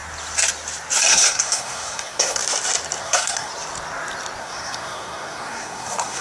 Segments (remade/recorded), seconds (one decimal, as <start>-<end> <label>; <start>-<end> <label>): 0.0-1.1 recorded; 1.1-2.4 remade; 2.4-3.0 recorded; 3.0-3.5 remade; 3.5-4.4 recorded; 4.4-6.2 remade